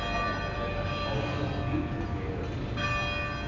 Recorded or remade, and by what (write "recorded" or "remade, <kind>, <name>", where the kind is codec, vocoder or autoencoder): recorded